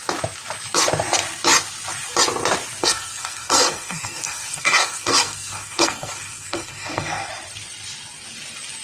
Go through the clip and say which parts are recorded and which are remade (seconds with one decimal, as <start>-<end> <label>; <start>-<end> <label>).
0.0-2.8 recorded; 2.8-7.3 remade; 7.3-8.8 recorded